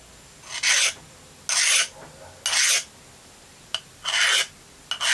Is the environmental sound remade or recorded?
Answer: recorded